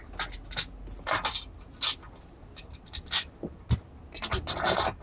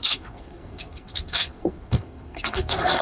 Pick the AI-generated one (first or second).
second